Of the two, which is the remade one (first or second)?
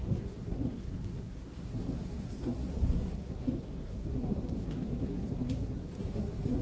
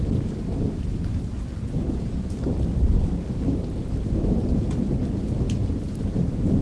first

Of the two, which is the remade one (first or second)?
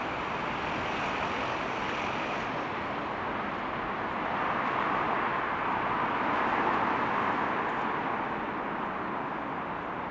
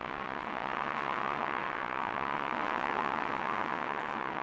second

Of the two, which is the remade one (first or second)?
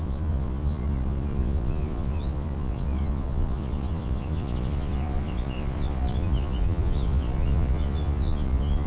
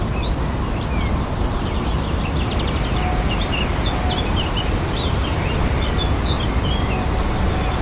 first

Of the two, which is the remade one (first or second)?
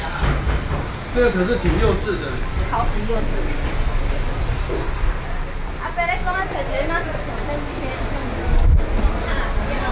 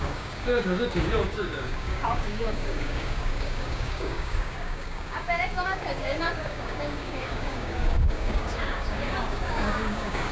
second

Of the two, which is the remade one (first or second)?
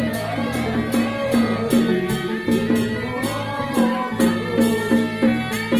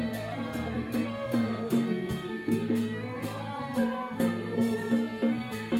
second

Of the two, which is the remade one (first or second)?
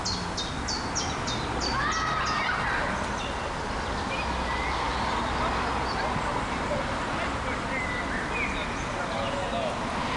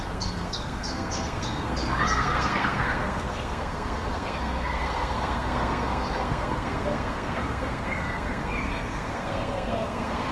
second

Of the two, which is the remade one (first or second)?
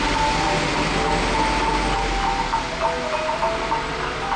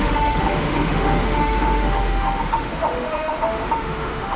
second